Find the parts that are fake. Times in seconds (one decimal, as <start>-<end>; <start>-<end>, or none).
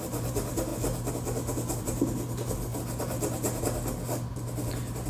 none